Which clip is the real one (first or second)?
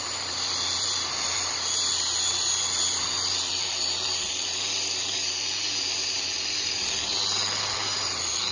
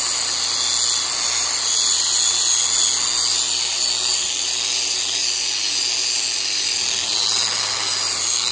second